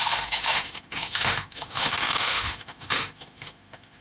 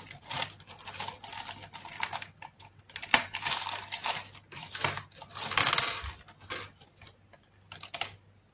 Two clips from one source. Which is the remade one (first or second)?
first